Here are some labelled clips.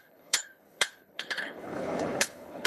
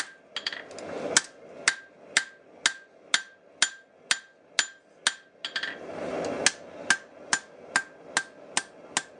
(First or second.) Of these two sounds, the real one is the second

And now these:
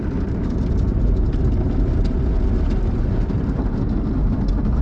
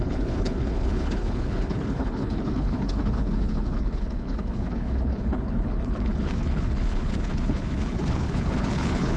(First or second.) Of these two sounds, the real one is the first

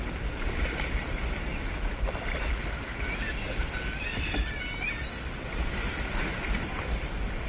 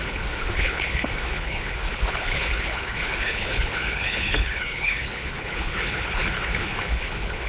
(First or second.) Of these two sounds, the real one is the first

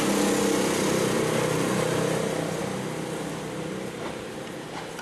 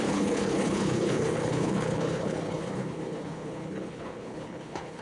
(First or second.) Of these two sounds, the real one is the first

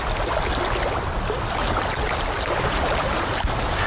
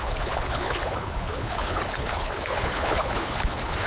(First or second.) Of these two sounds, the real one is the first